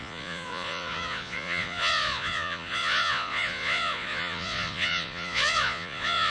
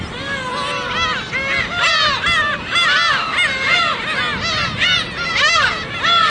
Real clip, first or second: second